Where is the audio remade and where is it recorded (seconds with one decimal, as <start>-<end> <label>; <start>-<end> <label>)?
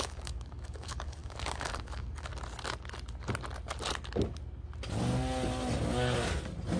0.0-2.3 remade; 2.3-6.8 recorded